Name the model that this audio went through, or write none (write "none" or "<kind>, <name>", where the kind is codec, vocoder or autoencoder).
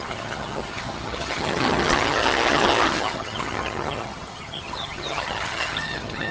vocoder, HiFi-GAN